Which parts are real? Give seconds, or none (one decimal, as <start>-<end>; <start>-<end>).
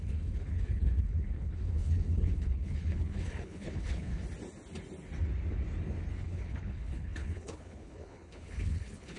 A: 4.1-6.1